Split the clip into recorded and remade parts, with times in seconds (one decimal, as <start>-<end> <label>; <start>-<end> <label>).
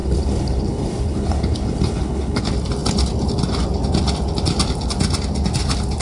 0.0-2.4 remade; 2.4-6.0 recorded